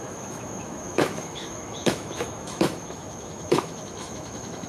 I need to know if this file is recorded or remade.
remade